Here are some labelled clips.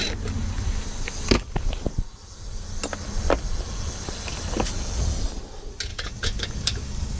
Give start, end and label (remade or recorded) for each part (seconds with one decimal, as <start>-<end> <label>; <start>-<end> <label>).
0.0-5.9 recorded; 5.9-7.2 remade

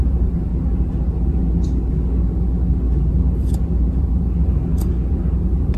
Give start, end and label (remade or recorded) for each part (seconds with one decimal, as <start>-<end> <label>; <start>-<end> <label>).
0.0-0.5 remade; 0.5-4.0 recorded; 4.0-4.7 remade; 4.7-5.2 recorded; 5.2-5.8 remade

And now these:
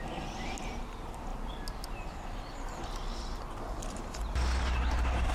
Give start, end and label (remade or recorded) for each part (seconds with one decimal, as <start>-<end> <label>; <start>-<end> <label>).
0.0-5.3 recorded

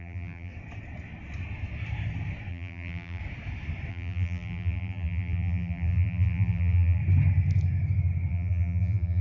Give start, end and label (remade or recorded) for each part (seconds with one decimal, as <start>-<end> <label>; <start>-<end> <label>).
0.0-0.5 remade; 0.5-2.5 recorded; 2.5-3.2 remade; 3.2-3.9 recorded; 3.9-7.0 remade; 7.0-8.3 recorded; 8.3-9.2 remade